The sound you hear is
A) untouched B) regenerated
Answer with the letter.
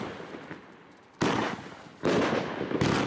A